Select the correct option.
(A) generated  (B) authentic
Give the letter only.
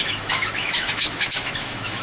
A